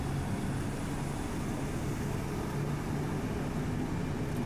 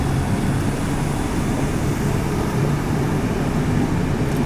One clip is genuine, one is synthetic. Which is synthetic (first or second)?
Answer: second